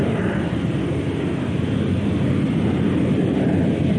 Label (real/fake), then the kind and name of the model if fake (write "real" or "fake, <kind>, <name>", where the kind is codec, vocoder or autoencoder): real